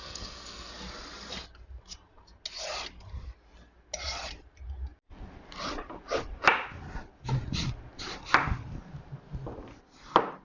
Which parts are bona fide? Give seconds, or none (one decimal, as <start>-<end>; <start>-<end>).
0.7-10.4